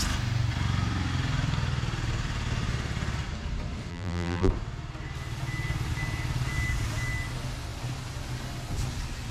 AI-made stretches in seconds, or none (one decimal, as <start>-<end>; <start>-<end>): 3.9-4.5